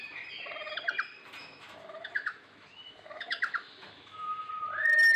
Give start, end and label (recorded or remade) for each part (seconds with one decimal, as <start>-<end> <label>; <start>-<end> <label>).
0.0-1.4 recorded; 1.4-4.5 remade; 4.5-5.2 recorded